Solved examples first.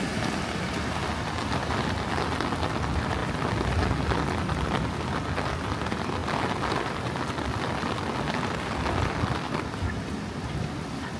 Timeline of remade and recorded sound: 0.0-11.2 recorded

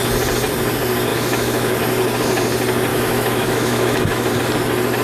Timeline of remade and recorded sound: 0.0-1.1 recorded; 1.1-1.8 remade; 1.8-2.9 recorded; 2.9-4.3 remade; 4.3-5.0 recorded

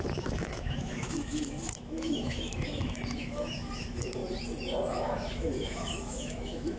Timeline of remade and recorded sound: 0.0-4.2 remade; 4.2-4.9 recorded; 4.9-6.8 remade

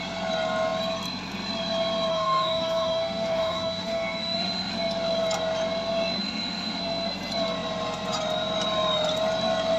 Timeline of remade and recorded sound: 0.0-2.1 recorded; 2.1-4.7 remade; 4.7-6.2 recorded; 6.2-6.8 remade; 6.8-9.8 recorded

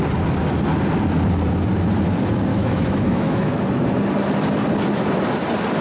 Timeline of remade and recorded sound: 0.0-2.5 recorded; 2.5-3.6 remade; 3.6-5.8 recorded

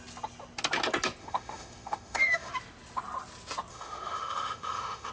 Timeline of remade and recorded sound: 0.0-1.2 recorded; 1.2-2.5 remade; 2.5-3.7 recorded; 3.7-5.1 remade

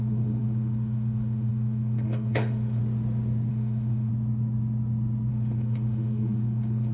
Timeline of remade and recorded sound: 0.0-2.8 remade; 2.8-3.5 recorded; 3.5-4.1 remade; 4.1-5.3 recorded; 5.3-6.9 remade